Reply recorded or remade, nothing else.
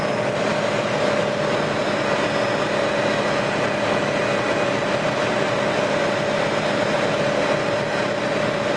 recorded